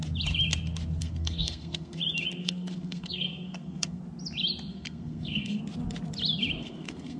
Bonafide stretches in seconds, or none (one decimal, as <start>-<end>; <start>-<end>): 0.0-1.0; 2.0-2.4; 4.0-4.7; 5.6-6.6